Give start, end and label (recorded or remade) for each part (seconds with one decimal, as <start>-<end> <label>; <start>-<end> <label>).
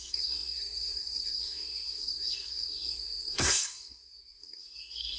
0.0-5.2 remade